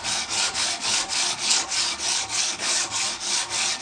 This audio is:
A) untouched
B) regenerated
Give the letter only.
B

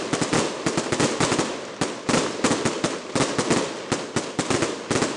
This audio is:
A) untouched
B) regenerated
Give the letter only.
A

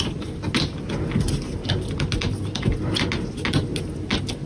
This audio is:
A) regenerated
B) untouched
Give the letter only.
B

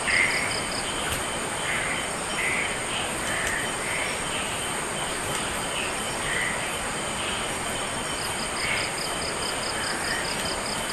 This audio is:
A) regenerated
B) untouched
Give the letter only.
B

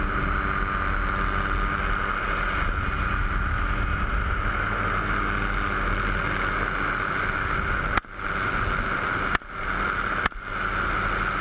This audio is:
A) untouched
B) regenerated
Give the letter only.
A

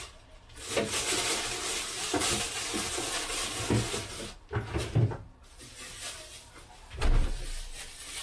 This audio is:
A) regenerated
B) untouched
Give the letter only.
B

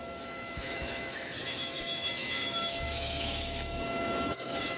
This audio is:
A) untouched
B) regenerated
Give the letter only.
B